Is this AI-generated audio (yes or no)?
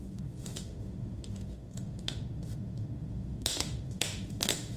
yes